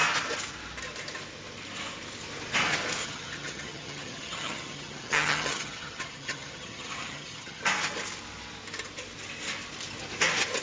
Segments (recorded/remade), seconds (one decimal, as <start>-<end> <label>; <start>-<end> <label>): 0.0-3.0 recorded; 3.0-7.6 remade; 7.6-10.6 recorded